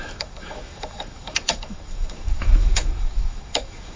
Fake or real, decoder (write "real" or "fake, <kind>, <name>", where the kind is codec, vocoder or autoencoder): fake, autoencoder, DAC-VAE